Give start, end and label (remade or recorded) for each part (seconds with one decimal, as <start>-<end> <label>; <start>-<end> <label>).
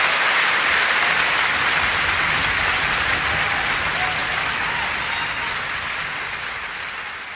0.0-7.4 recorded